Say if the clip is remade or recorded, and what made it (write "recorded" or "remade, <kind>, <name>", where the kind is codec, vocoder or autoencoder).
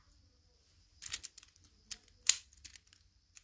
recorded